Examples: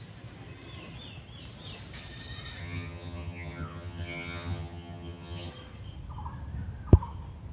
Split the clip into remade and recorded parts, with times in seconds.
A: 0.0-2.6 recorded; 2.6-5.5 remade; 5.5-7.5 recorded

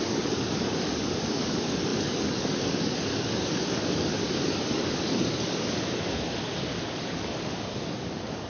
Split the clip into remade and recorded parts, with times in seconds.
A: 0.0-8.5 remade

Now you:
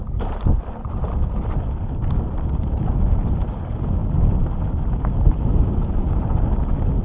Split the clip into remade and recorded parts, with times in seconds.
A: 0.0-7.0 recorded

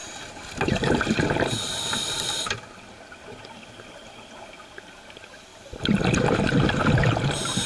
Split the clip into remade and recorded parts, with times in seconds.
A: 0.0-2.6 remade; 2.6-7.7 recorded

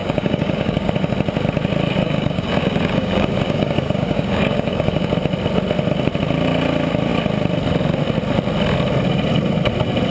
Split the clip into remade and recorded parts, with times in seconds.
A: 0.0-0.9 remade; 0.9-2.0 recorded; 2.0-5.1 remade; 5.1-10.1 recorded

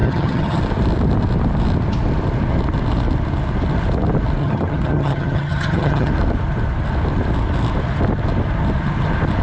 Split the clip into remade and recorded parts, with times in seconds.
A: 0.0-0.6 remade; 0.6-4.4 recorded; 4.4-6.1 remade; 6.1-9.4 recorded

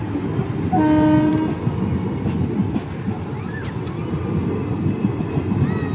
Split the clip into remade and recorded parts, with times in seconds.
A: 0.0-5.9 recorded